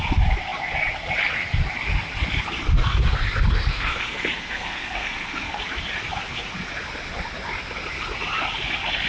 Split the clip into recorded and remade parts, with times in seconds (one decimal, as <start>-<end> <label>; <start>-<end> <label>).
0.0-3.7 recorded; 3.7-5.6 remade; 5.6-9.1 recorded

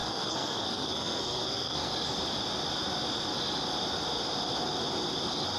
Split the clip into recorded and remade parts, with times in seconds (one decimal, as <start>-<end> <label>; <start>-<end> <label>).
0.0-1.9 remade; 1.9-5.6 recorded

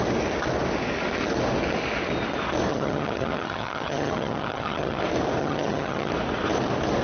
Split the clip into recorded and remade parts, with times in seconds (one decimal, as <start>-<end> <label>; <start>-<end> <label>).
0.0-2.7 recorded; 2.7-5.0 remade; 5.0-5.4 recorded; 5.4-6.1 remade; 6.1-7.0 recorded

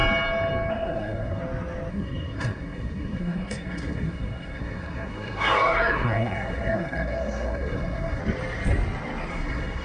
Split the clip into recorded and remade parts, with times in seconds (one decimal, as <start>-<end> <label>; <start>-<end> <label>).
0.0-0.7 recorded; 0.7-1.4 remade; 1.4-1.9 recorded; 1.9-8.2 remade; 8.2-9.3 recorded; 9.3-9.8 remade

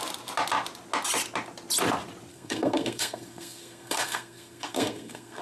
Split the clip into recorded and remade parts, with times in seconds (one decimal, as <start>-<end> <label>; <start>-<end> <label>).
0.0-2.3 recorded; 2.3-5.4 remade

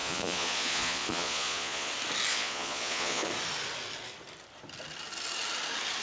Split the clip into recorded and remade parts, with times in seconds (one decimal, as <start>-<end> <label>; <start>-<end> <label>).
0.0-1.9 remade; 1.9-2.3 recorded; 2.3-3.3 remade; 3.3-6.0 recorded

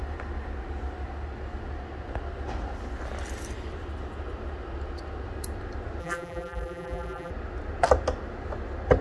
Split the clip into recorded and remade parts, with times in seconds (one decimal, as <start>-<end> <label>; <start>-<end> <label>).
0.0-6.0 recorded; 6.0-7.3 remade; 7.3-9.0 recorded